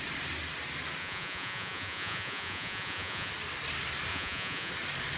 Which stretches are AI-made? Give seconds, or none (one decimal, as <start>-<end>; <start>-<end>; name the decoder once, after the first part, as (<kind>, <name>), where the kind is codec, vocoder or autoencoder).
1.0-3.3 (vocoder, Vocos); 4.1-4.7